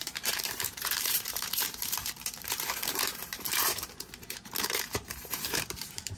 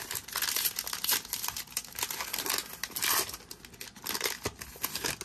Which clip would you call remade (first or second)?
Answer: first